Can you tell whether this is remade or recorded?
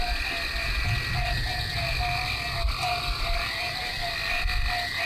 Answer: recorded